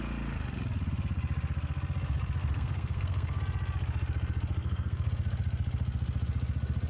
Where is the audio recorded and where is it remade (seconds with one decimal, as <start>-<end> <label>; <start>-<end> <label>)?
0.0-2.4 recorded; 2.4-3.4 remade; 3.4-4.6 recorded; 4.6-5.1 remade; 5.1-6.9 recorded